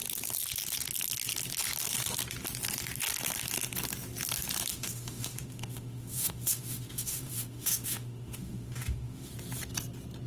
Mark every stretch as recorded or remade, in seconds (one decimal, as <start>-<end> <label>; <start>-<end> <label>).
0.0-4.7 recorded; 4.7-9.3 remade; 9.3-10.3 recorded